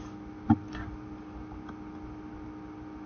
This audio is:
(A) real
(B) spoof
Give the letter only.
A